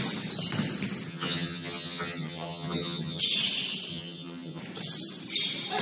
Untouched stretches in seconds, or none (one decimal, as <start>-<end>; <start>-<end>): 0.0-1.1; 3.2-3.9; 4.6-5.8